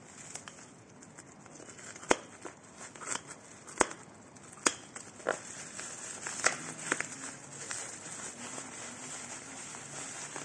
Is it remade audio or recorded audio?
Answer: recorded